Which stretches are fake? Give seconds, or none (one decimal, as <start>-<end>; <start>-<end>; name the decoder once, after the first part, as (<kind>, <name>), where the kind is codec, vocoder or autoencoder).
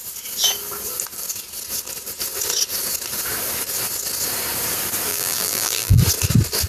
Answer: 5.1-6.0 (vocoder, BigVGAN v2)